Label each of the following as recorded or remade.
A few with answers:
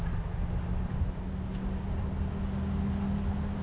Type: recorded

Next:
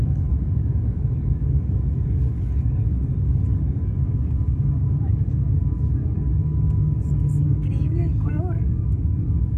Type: remade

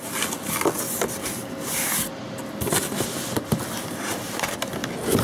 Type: recorded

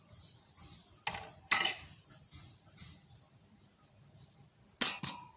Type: recorded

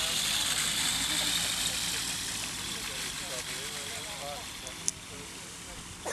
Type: recorded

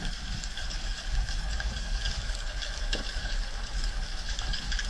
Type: remade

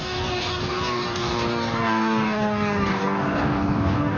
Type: remade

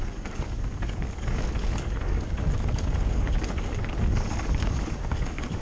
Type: remade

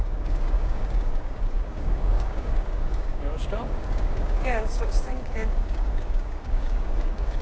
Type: remade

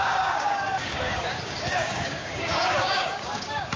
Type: remade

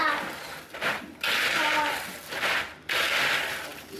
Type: recorded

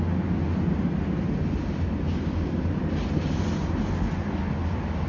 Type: recorded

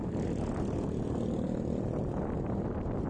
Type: recorded